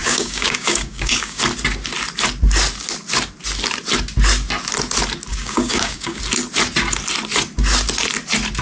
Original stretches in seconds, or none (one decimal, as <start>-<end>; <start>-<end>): 1.4-5.3; 6.2-8.6